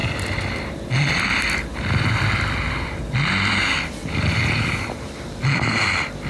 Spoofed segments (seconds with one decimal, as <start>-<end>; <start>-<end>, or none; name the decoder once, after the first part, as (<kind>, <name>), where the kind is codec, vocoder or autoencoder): 0.0-3.3 (vocoder, BigVGAN v2); 4.0-4.9